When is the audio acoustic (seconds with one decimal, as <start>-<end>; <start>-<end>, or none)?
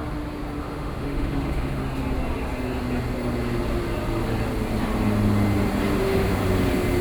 0.0-0.6; 1.8-6.0; 6.4-7.0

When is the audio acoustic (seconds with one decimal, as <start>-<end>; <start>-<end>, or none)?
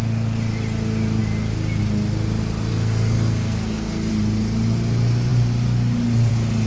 0.0-2.7; 4.1-6.7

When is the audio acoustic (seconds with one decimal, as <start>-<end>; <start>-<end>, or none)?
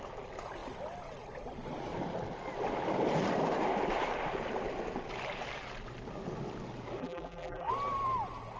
0.0-7.0; 7.7-8.6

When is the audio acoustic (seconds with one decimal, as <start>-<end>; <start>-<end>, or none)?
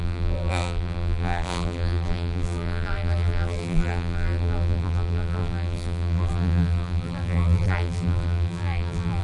none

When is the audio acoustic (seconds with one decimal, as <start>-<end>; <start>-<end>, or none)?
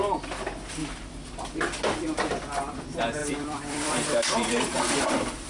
0.0-0.8; 1.6-3.2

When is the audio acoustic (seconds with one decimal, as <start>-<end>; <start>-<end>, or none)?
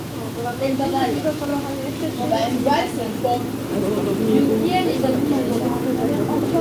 1.5-5.5